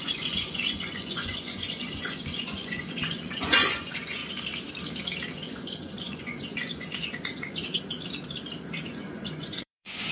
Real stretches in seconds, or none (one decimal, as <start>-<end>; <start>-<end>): 4.2-5.3; 7.6-8.8